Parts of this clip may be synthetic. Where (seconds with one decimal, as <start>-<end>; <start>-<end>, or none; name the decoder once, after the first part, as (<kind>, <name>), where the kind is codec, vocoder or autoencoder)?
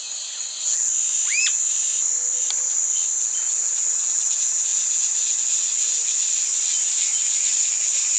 0.0-0.9 (vocoder, WaveNeXt); 3.2-6.5; 7.5-8.2